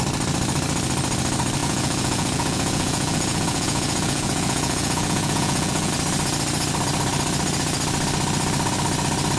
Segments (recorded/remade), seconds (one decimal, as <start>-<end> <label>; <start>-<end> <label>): 0.0-1.6 recorded; 1.6-5.9 remade; 5.9-9.4 recorded